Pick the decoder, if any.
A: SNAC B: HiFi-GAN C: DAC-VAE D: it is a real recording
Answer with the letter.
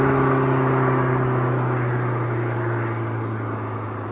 D